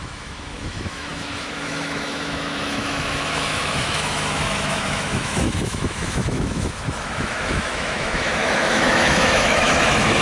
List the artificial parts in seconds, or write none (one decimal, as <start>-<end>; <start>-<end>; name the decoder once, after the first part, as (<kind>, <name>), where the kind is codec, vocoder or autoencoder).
0.0-10.2 (autoencoder, DAC-VAE)